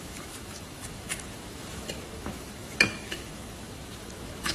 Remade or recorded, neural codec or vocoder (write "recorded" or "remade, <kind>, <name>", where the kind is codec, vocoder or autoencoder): remade, autoencoder, DAC-VAE